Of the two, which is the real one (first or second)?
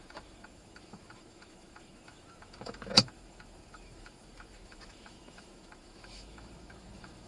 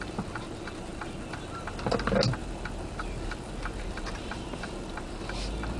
second